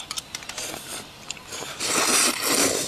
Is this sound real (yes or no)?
no